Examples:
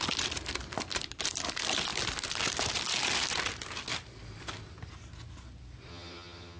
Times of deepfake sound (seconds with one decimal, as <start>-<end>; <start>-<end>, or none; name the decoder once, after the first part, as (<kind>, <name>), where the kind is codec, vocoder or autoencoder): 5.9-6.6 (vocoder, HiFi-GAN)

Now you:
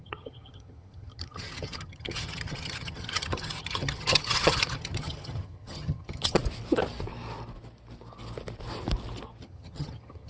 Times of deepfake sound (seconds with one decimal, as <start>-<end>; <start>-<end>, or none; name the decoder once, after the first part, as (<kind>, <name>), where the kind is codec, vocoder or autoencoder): 0.0-6.4 (vocoder, HiFi-GAN); 9.4-10.3

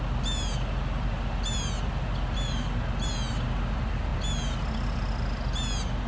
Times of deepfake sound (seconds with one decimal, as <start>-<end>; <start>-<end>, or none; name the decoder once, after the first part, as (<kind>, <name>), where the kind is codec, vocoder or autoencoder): none

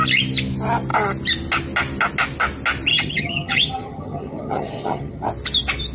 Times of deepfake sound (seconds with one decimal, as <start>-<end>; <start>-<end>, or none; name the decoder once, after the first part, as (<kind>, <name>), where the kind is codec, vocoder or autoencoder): 2.9-5.3 (vocoder, HiFi-GAN)